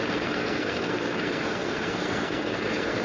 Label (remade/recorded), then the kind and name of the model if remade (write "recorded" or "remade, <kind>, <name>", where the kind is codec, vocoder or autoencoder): remade, codec, SNAC